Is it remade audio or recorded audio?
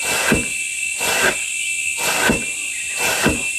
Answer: recorded